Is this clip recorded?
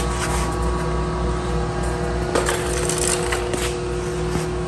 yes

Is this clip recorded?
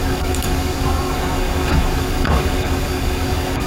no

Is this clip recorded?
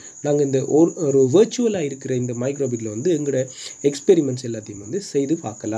no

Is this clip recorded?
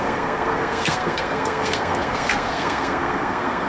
no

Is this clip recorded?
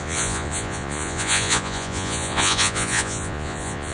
no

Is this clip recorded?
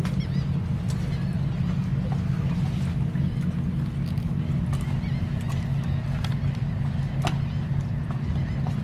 yes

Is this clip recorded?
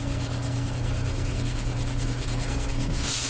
no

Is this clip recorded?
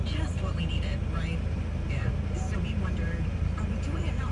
yes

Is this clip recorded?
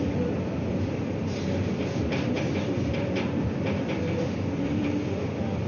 no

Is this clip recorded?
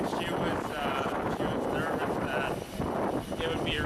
yes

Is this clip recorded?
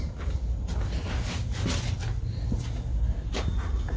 yes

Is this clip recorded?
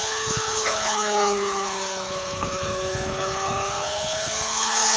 no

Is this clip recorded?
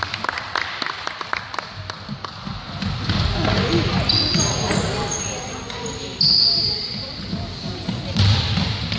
yes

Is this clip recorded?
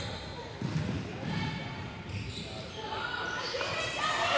yes